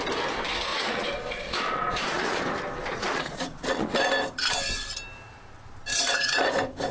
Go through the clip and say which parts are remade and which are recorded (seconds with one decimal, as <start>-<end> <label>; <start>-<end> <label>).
0.0-0.7 recorded; 0.7-2.4 remade; 2.4-2.9 recorded; 2.9-3.9 remade; 3.9-5.9 recorded; 5.9-6.4 remade; 6.4-6.9 recorded